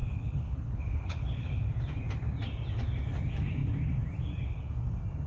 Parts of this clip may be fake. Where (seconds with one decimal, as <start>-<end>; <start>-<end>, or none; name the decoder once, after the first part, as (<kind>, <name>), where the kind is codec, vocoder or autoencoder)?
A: 0.0-1.6 (codec, HILCodec)